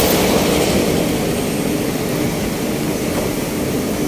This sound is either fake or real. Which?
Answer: real